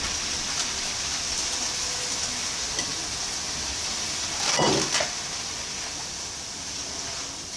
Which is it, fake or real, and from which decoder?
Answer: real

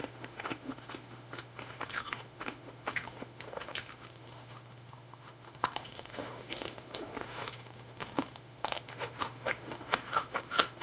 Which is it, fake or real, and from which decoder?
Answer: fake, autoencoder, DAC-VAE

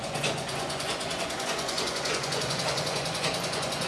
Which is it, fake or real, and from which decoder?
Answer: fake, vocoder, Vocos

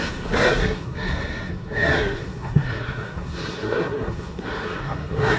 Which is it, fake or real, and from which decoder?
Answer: fake, codec, SNAC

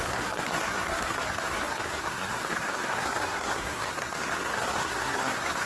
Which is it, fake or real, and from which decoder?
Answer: fake, codec, SNAC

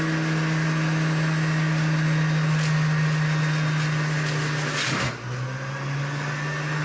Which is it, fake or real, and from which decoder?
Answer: real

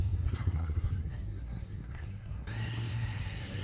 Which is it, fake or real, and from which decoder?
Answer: fake, codec, SNAC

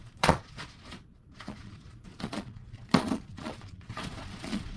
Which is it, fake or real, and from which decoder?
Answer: fake, vocoder, Vocos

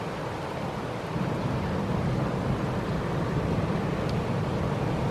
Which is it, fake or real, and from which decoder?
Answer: real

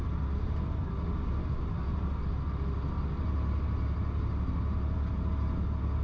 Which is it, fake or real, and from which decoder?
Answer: real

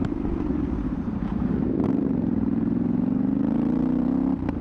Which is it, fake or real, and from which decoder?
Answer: fake, vocoder, BigVGAN v2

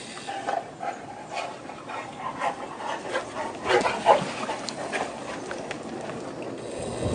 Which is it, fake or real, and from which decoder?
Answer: real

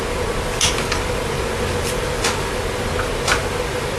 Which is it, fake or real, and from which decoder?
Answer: real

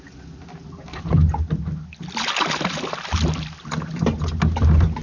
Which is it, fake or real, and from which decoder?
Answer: real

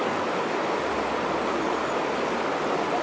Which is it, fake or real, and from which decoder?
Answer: real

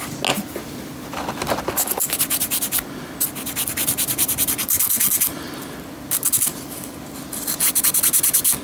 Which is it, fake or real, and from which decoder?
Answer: real